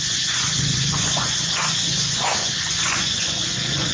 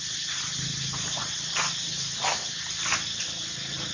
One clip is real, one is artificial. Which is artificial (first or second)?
first